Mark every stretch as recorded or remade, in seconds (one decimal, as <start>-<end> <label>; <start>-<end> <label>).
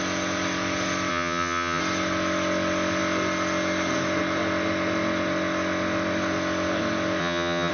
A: 0.0-1.1 recorded; 1.1-1.8 remade; 1.8-7.2 recorded; 7.2-7.7 remade